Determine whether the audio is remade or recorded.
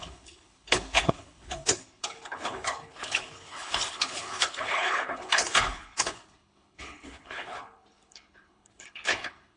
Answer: remade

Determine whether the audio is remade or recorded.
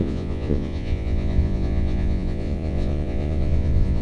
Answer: remade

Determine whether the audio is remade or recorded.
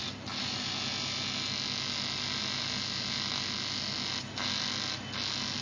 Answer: recorded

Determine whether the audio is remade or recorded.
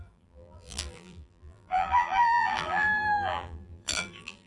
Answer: remade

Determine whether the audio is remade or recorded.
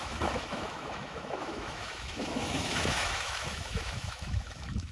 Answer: remade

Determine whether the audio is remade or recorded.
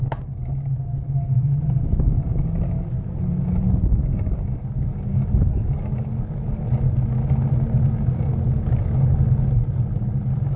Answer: recorded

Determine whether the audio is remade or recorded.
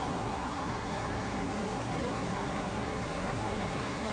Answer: remade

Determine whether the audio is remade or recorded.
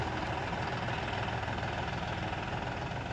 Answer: recorded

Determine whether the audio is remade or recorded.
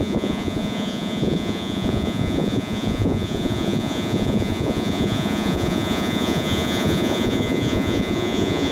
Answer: remade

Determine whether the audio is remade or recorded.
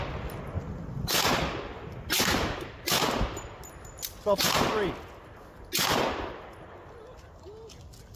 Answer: recorded